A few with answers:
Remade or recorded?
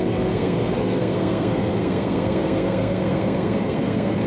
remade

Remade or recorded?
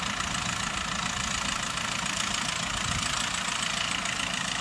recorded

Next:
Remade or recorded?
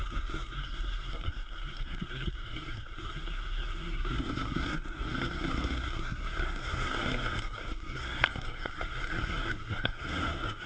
remade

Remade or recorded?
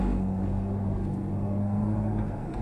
remade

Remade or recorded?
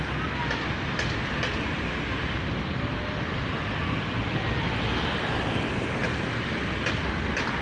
recorded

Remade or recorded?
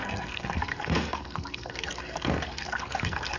remade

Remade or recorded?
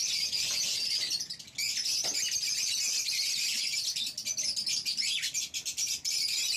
recorded